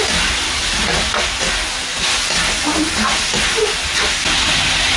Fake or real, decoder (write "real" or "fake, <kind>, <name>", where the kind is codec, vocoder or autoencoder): real